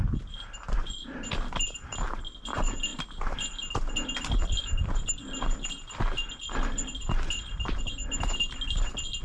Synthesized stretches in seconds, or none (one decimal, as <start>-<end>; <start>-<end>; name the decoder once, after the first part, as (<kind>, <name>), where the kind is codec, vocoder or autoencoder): none